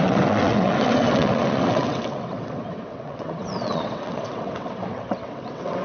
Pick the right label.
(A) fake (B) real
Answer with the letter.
A